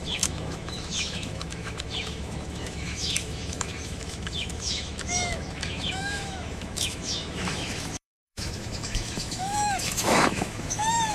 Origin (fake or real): fake